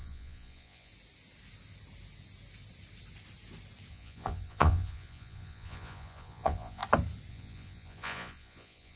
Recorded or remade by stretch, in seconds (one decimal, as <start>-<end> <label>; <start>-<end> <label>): 0.0-0.9 remade; 0.9-3.9 recorded; 3.9-6.8 remade; 6.8-7.3 recorded; 7.3-9.0 remade